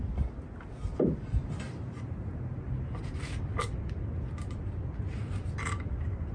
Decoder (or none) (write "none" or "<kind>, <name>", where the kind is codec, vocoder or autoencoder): none